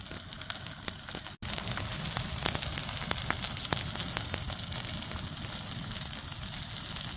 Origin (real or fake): real